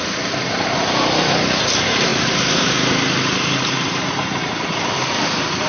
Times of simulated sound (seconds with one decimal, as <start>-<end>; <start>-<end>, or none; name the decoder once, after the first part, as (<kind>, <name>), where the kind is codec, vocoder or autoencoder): none